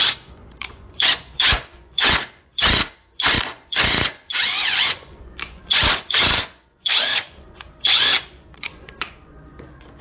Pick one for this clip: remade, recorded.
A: remade